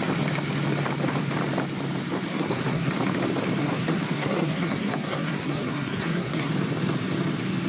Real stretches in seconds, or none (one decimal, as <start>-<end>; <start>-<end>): 0.0-2.3; 2.9-3.6; 6.5-7.7